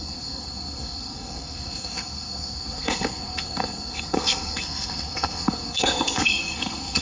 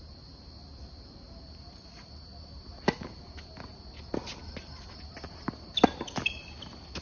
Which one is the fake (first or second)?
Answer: first